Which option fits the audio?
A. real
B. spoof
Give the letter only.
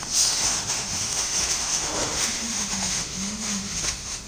B